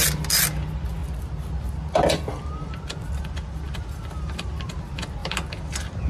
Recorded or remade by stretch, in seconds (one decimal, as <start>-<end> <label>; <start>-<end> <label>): 0.0-6.1 recorded